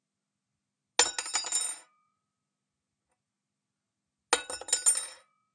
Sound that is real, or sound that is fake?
real